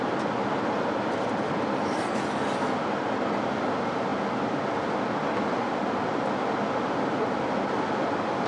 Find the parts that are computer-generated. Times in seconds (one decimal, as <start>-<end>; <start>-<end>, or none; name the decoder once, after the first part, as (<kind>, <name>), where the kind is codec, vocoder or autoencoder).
none